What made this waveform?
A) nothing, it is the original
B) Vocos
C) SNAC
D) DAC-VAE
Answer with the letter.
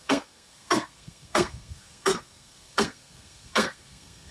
C